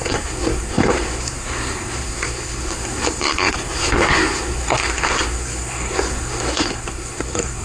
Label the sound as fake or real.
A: fake